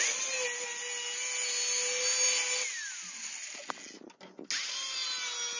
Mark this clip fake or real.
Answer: real